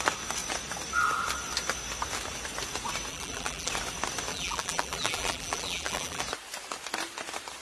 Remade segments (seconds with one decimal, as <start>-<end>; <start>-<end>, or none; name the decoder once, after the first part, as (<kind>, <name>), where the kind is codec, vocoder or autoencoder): 3.1-3.7 (vocoder, BigVGAN v2); 4.3-6.2